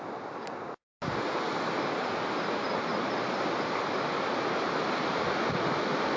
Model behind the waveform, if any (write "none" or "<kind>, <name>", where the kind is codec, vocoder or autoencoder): none